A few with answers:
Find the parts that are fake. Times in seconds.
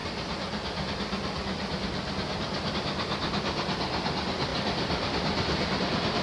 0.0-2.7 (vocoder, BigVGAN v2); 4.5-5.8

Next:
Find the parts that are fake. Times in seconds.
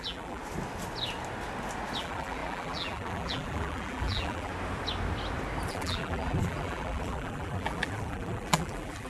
0.0-0.4 (vocoder, BigVGAN v2); 2.0-4.5; 5.7-9.1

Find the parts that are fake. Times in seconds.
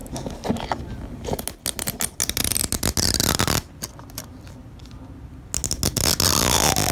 none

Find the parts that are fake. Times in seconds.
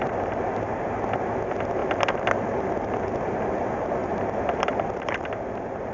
0.0-0.9 (vocoder, BigVGAN v2); 4.0-5.9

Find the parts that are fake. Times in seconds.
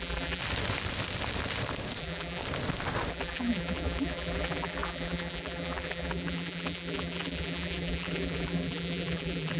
0.0-0.4 (vocoder, BigVGAN v2); 2.0-2.4; 3.1-9.6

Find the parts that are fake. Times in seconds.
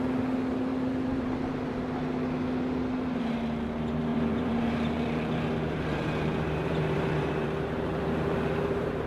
0.7-1.5 (vocoder, BigVGAN v2); 4.1-9.1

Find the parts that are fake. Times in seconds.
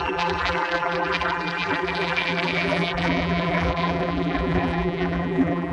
0.0-5.7 (vocoder, BigVGAN v2)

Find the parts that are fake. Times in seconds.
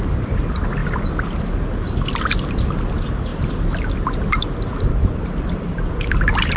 none